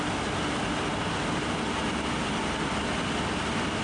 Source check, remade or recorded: recorded